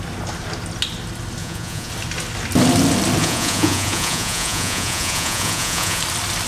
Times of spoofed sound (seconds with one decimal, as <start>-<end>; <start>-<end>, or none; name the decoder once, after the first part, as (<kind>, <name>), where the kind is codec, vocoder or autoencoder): 1.4-1.9 (vocoder, Vocos); 3.2-6.0